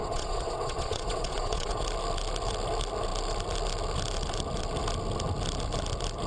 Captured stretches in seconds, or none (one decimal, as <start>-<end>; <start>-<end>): 1.8-6.3